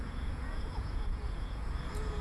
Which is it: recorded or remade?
remade